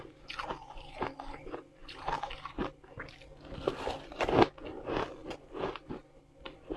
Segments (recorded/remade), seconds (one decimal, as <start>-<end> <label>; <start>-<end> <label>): 0.0-6.8 recorded